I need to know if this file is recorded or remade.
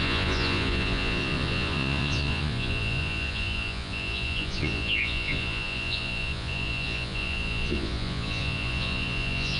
remade